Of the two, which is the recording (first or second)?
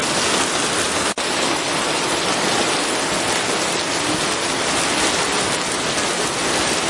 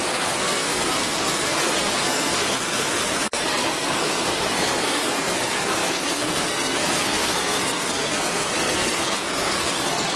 first